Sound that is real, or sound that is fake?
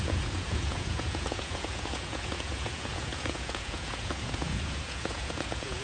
fake